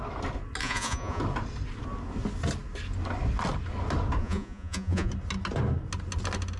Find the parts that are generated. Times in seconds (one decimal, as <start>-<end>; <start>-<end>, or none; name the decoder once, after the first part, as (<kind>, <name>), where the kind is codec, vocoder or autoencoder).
0.6-1.2 (vocoder, Vocos); 4.2-5.1